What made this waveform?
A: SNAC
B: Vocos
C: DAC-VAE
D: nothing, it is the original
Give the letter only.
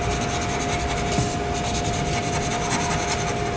D